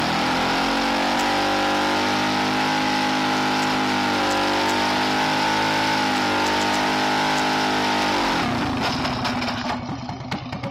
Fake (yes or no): no